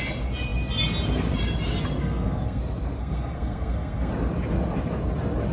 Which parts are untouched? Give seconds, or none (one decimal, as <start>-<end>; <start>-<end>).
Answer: 0.0-2.0; 2.6-3.0; 4.1-5.5